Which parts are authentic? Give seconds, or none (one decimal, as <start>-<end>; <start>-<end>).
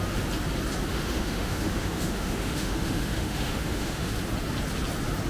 0.0-0.9; 4.1-5.3